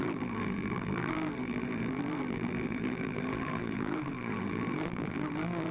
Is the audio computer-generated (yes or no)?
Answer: yes